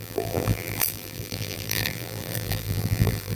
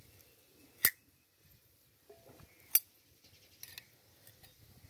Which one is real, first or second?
second